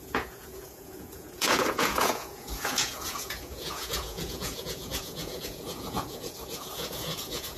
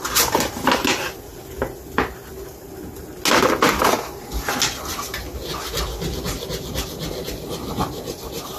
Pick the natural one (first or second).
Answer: second